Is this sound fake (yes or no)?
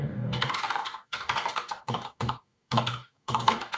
yes